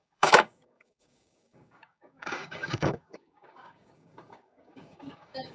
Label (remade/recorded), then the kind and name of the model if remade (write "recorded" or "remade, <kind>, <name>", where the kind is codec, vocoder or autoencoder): remade, codec, DAC